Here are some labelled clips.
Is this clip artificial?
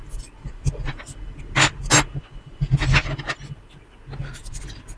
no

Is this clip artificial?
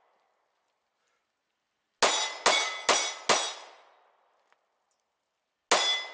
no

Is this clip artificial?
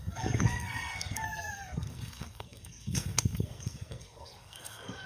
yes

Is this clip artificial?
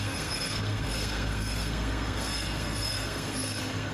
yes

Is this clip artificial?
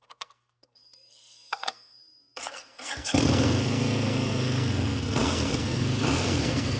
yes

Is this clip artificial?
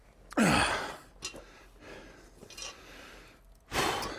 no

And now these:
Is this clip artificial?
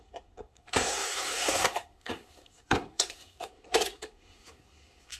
yes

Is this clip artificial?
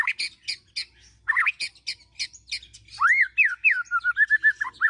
no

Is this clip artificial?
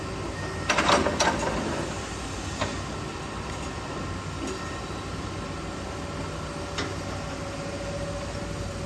no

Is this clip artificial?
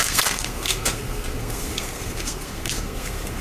yes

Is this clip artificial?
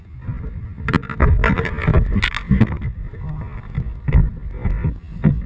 no